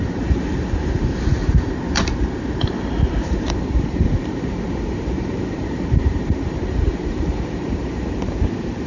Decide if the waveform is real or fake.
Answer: fake